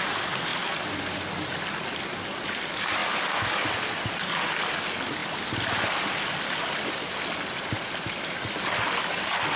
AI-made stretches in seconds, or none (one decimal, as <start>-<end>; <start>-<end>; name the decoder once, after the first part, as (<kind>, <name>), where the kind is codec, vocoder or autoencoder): 5.2-9.0 (vocoder, BigVGAN v2)